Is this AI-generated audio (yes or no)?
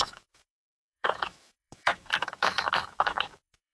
yes